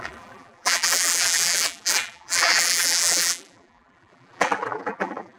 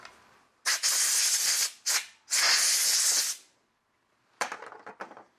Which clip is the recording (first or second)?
second